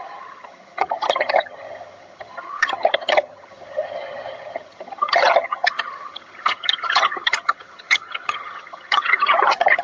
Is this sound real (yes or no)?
no